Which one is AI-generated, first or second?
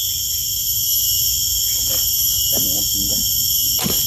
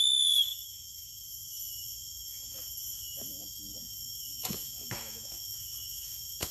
second